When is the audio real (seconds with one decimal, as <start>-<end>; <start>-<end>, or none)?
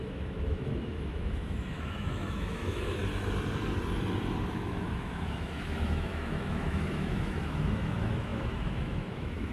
3.0-4.5